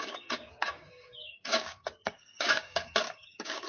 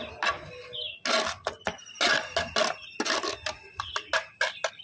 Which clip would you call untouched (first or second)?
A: second